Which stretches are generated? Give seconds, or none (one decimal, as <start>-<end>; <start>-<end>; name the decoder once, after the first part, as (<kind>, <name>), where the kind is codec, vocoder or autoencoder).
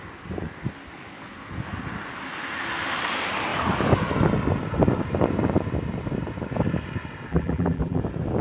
7.3-8.0 (vocoder, BigVGAN v2)